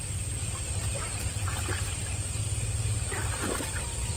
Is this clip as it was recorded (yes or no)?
yes